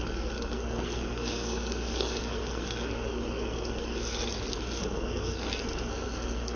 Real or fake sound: fake